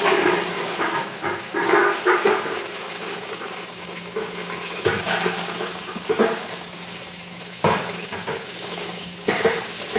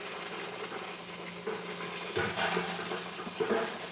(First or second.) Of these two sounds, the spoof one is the first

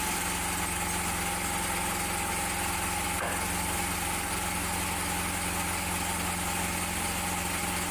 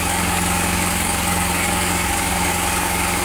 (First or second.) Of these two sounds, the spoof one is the second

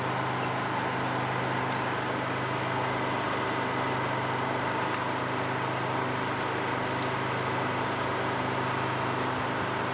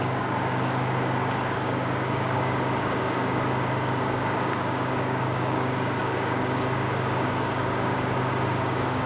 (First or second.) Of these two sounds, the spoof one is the second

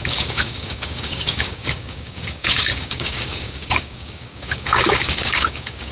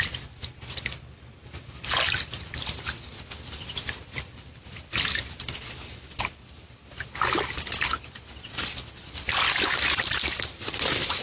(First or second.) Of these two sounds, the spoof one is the first